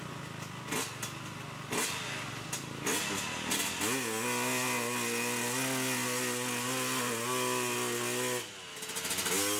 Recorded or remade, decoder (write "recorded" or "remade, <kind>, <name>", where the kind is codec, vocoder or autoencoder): recorded